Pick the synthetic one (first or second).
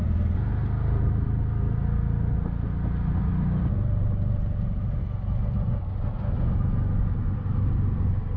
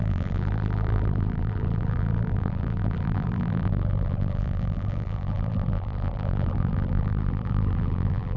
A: second